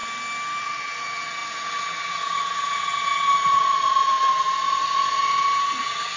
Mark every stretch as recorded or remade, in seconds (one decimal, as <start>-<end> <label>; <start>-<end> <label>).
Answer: 0.0-0.6 recorded; 0.6-6.2 remade